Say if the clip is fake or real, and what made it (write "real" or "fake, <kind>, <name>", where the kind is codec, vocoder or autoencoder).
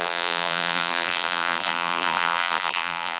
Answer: fake, vocoder, BigVGAN v2